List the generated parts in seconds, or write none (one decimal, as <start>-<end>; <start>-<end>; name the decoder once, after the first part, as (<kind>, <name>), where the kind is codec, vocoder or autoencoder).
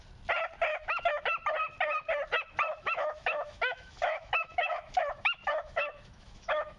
0.7-1.2 (autoencoder, DAC-VAE); 2.7-6.8